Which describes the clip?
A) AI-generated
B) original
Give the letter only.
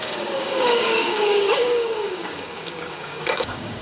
A